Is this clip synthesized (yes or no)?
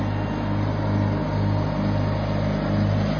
no